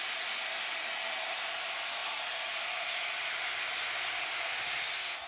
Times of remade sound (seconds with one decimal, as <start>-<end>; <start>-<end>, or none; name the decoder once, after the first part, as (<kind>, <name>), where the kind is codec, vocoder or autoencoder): none